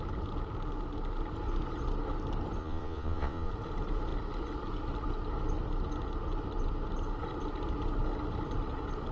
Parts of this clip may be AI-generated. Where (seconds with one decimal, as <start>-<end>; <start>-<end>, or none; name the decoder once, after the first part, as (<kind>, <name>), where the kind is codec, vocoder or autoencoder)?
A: 2.6-3.5 (vocoder, Vocos)